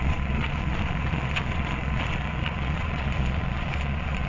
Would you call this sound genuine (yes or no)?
no